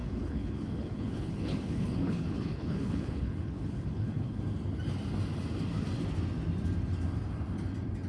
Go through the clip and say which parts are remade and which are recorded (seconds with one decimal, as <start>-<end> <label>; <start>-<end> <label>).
0.0-4.4 remade; 4.4-8.1 recorded